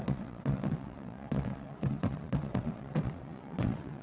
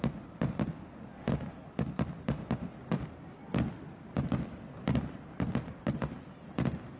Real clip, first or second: second